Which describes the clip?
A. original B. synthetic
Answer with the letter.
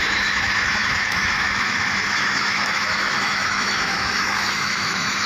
B